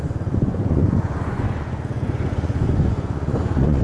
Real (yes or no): no